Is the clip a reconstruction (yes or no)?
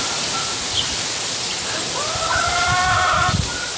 no